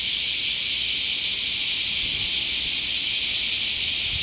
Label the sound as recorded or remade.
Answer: recorded